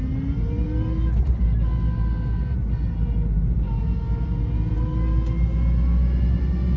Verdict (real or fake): real